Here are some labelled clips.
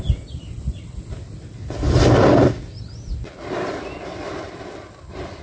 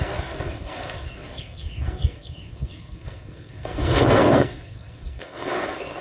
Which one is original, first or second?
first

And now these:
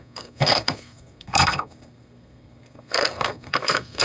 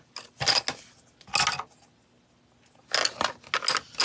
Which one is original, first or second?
second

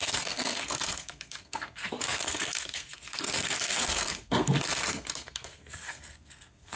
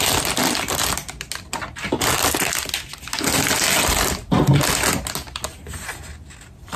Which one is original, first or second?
second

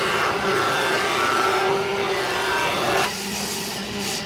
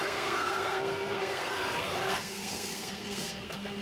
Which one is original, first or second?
first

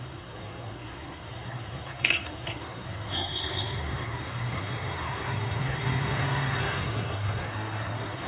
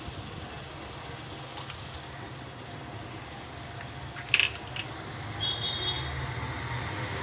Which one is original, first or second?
second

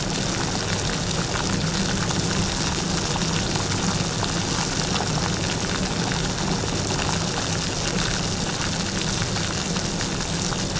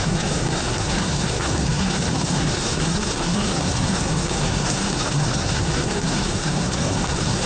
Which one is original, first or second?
first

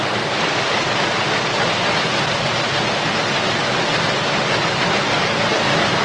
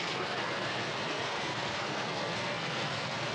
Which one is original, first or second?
first